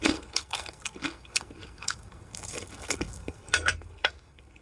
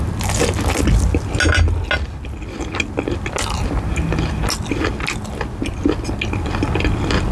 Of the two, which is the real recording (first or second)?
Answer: second